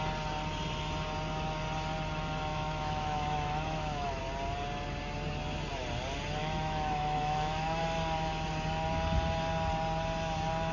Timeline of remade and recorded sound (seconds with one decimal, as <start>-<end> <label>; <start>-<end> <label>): 0.0-2.5 recorded; 2.5-4.2 remade; 4.2-6.4 recorded; 6.4-7.8 remade; 7.8-10.7 recorded